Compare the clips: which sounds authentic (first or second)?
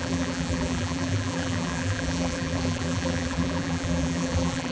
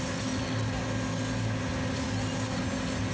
second